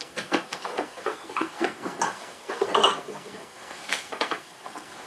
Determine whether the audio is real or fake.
fake